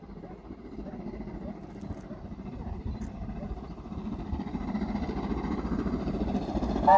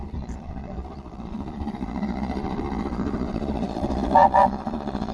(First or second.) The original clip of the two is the first